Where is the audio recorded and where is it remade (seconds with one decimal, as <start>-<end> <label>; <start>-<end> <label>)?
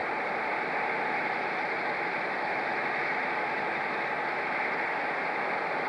0.0-5.9 recorded